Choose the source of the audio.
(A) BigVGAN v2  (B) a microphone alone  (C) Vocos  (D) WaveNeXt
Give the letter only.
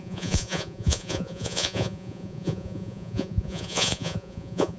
C